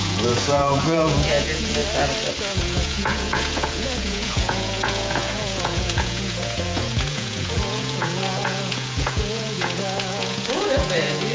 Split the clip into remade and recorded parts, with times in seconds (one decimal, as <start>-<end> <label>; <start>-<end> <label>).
0.0-1.8 remade; 1.8-2.4 recorded; 2.4-11.3 remade